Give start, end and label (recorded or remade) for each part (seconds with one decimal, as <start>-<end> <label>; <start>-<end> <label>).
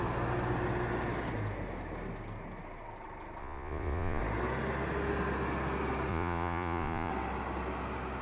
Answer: 0.0-3.4 recorded; 3.4-4.2 remade; 4.2-6.1 recorded; 6.1-7.1 remade; 7.1-8.2 recorded